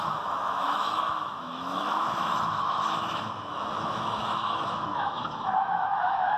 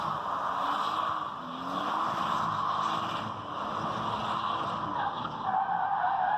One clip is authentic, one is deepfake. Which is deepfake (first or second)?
first